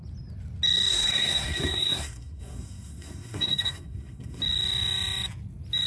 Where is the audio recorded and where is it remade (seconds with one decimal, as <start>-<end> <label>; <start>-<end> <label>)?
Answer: 0.0-0.9 recorded; 0.9-4.4 remade; 4.4-5.9 recorded